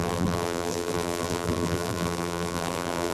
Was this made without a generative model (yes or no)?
no